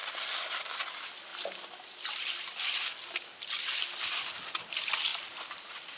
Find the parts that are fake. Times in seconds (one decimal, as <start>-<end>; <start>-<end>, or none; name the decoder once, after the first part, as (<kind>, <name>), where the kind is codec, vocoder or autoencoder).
1.3-2.1 (vocoder, BigVGAN v2); 5.1-6.0